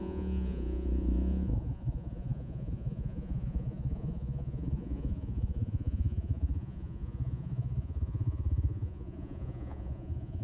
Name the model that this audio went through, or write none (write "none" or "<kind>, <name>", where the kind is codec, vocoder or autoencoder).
vocoder, Vocos